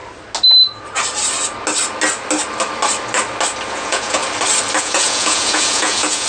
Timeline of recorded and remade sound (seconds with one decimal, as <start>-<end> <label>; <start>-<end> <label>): 0.0-3.7 recorded; 3.7-4.2 remade; 4.2-4.8 recorded; 4.8-6.3 remade